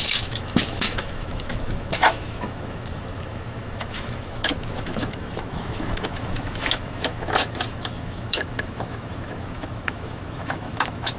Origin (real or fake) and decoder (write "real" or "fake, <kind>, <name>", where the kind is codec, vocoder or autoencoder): fake, autoencoder, DAC-VAE